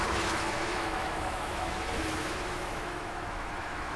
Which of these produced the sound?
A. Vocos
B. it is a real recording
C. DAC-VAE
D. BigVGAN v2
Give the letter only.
C